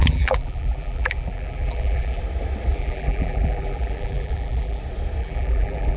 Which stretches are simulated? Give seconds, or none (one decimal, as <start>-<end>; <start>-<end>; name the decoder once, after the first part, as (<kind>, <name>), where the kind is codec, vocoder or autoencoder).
0.0-2.2 (vocoder, BigVGAN v2); 2.7-4.8; 5.2-6.0